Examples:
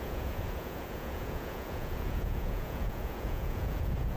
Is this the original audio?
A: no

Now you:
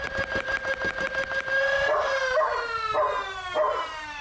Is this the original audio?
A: yes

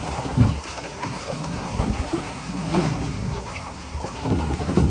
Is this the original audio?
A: no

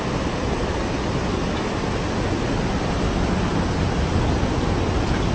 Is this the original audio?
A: yes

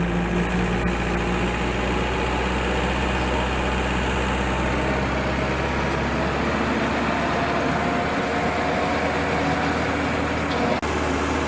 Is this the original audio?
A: yes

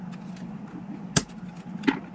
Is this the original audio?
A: yes